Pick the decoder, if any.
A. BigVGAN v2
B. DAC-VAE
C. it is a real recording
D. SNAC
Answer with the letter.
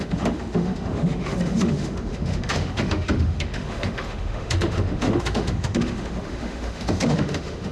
B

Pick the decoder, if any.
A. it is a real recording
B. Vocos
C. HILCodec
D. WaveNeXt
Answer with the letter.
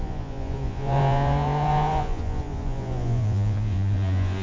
B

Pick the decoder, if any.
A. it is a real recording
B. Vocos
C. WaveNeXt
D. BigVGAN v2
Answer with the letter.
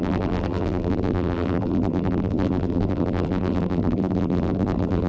D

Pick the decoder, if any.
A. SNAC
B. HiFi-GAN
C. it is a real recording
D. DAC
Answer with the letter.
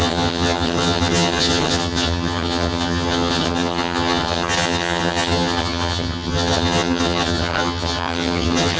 B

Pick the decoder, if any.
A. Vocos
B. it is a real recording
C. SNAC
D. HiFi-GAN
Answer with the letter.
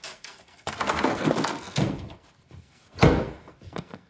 C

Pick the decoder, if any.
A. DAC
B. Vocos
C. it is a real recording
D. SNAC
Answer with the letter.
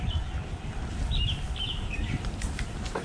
C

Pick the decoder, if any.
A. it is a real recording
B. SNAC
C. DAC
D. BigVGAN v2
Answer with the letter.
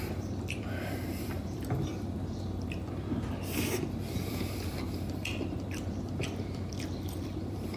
D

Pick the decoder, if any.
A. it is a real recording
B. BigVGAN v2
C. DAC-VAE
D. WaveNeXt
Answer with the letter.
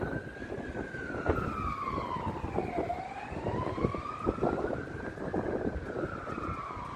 A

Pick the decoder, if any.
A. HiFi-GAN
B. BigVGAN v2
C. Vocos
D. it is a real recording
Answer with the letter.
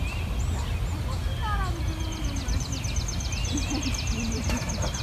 D